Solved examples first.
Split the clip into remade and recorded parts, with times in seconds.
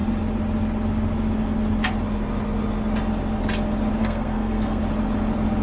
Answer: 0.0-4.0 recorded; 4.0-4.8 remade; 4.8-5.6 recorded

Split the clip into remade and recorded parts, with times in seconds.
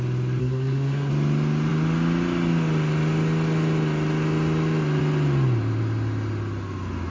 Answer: 0.0-0.4 recorded; 0.4-1.1 remade; 1.1-7.1 recorded